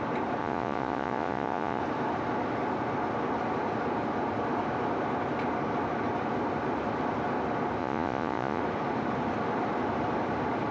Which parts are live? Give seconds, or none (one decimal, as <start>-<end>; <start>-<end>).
0.0-0.4; 1.8-7.8; 8.6-10.7